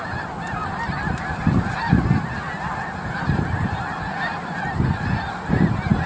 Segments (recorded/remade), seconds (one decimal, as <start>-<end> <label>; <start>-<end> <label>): 0.0-0.6 recorded; 0.6-1.9 remade; 1.9-6.1 recorded